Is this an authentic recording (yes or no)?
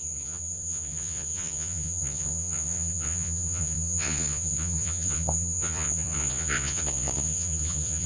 no